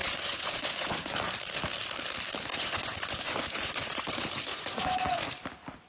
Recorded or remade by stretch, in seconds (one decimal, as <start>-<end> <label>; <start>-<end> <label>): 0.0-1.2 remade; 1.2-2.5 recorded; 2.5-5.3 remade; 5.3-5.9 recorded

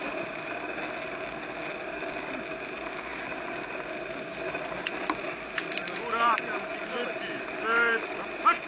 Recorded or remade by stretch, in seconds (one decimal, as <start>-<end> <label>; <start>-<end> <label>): 0.0-8.7 recorded

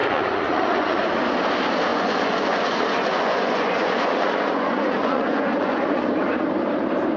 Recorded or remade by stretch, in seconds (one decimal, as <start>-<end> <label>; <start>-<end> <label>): 0.0-1.1 remade; 1.1-1.9 recorded; 1.9-6.1 remade; 6.1-7.2 recorded

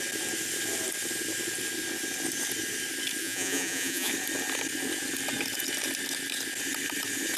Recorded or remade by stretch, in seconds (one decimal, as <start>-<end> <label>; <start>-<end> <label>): 0.0-3.2 recorded; 3.2-4.1 remade; 4.1-7.4 recorded

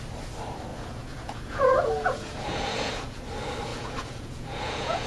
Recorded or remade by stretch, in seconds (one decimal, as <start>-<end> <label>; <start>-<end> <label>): 0.0-0.7 recorded; 0.7-3.2 remade; 3.2-3.7 recorded; 3.7-5.1 remade